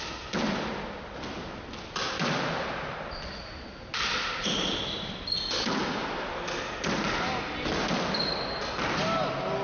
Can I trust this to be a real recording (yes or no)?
yes